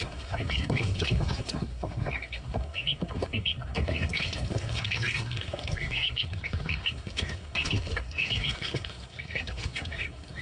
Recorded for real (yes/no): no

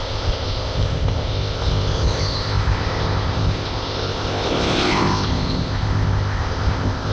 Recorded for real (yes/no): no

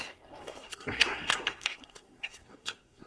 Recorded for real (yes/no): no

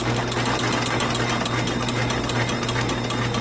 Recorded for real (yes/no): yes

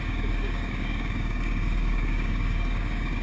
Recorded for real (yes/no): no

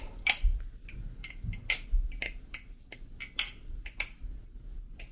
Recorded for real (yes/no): yes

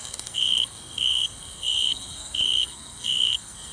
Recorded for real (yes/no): no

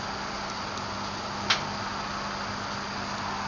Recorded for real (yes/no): yes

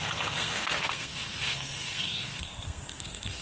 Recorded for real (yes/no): no